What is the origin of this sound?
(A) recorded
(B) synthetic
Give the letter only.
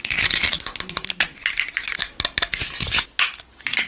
A